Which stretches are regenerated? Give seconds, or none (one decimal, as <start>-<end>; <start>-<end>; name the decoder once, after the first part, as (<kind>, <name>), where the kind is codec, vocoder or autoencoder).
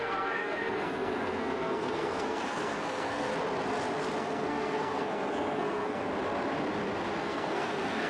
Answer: 0.0-3.3 (codec, SNAC); 4.2-6.1; 7.2-8.1